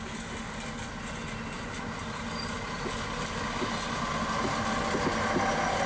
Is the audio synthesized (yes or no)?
no